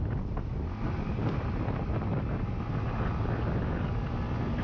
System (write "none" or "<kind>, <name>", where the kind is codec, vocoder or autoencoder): none